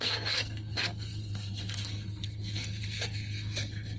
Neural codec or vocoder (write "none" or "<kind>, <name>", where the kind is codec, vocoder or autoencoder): codec, SNAC